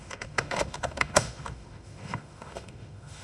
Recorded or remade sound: remade